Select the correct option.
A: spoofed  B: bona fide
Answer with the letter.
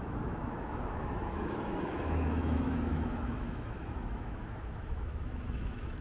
A